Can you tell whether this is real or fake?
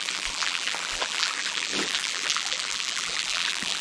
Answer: fake